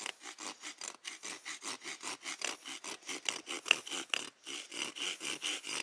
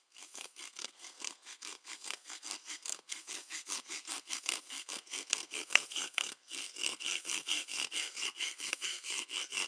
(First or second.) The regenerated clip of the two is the second